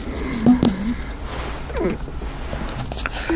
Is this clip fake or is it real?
real